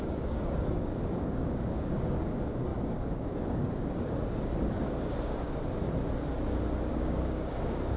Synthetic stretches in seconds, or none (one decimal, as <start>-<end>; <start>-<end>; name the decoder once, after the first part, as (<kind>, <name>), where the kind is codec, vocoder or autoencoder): 0.0-5.8 (codec, DAC); 6.9-8.0